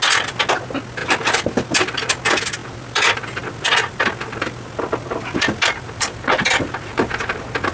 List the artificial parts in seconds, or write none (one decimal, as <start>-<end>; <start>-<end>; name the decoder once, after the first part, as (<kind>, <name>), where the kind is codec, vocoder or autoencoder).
1.0-2.0 (vocoder, BigVGAN v2); 2.6-7.2